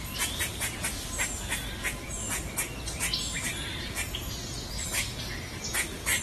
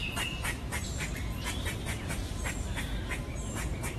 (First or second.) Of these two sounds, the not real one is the second